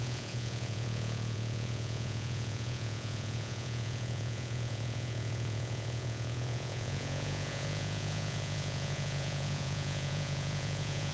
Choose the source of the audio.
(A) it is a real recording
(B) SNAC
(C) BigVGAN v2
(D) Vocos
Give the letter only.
D